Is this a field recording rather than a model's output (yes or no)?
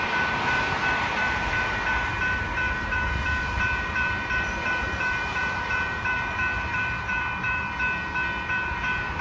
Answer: no